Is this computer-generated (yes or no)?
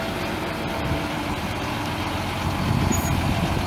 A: no